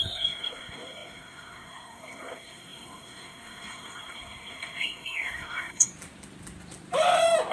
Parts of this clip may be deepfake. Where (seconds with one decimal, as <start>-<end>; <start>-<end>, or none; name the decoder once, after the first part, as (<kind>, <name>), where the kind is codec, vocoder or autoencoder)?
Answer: 0.0-5.9 (codec, SNAC)